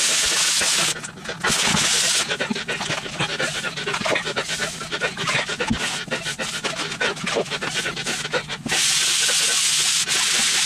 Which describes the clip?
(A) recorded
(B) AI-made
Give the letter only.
A